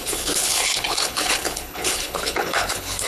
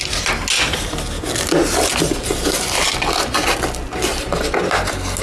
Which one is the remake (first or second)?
first